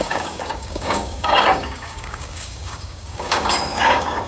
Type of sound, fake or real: fake